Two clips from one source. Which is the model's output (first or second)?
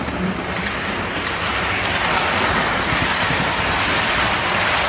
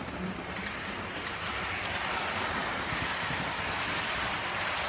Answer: second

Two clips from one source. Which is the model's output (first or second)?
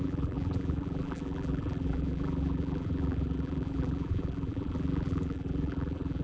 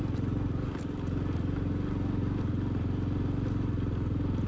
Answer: first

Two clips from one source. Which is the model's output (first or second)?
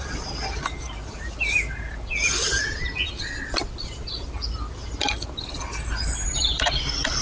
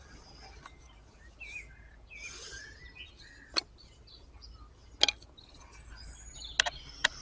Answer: first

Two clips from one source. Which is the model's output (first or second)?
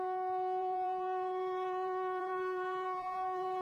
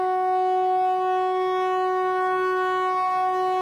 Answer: first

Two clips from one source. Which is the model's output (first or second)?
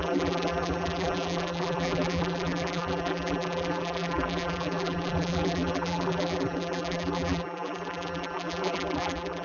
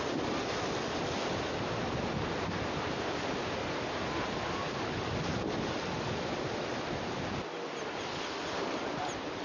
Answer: first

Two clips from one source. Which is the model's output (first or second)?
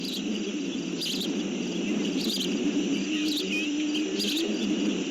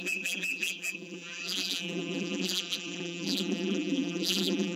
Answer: second